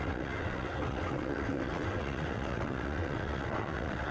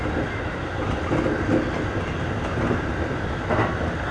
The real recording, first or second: second